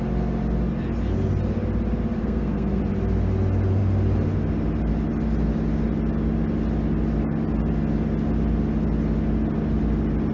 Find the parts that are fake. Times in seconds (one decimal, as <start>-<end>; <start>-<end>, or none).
2.2-2.8

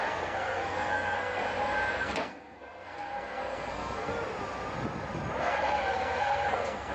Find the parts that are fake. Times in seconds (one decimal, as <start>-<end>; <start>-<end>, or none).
0.0-1.4; 1.9-4.1; 5.4-6.9

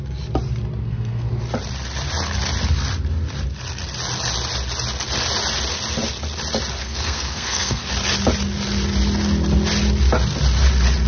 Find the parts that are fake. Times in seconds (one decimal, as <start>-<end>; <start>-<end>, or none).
0.8-1.4; 6.8-7.9

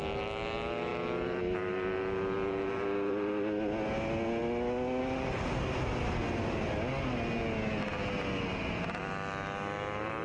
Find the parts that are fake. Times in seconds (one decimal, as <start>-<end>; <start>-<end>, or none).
none

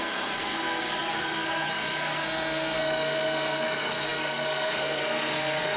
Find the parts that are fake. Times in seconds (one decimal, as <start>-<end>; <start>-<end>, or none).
0.0-5.8

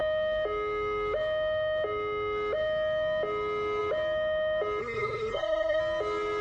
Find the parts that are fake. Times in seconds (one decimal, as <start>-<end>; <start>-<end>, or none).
4.8-5.8